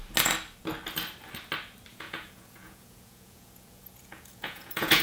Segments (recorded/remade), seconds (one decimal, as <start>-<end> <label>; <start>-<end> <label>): 0.0-1.9 recorded; 1.9-5.0 remade